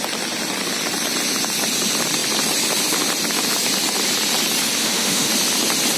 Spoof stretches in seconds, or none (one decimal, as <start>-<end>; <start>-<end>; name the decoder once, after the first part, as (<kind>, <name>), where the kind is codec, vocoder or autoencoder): 4.8-5.3 (autoencoder, DAC-VAE)